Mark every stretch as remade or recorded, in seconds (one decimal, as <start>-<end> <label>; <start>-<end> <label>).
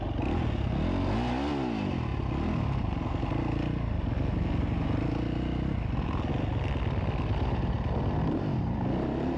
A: 0.0-9.4 recorded